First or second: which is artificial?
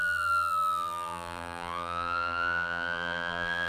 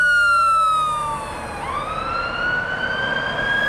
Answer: first